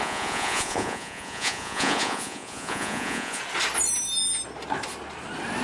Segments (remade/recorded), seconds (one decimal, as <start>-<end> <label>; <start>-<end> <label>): 0.0-3.4 remade; 3.4-5.6 recorded